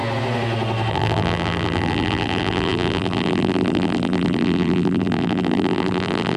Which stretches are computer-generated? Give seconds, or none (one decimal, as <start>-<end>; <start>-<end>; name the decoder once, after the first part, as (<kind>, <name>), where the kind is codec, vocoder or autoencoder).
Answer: 0.9-6.4 (vocoder, BigVGAN v2)